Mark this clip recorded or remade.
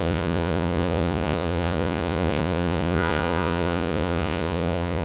remade